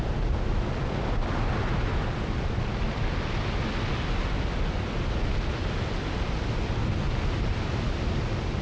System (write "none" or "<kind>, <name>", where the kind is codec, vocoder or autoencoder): none